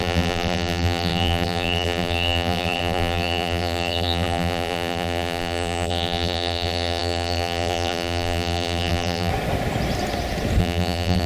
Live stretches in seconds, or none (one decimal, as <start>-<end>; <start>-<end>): 9.3-10.6